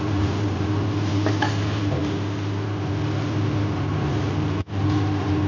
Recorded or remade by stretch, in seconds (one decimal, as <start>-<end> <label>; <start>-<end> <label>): 0.0-2.0 remade; 2.0-5.5 recorded